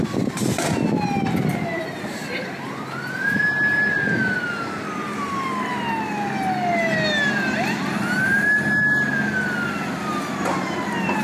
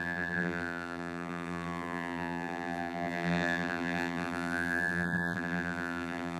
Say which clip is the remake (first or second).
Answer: second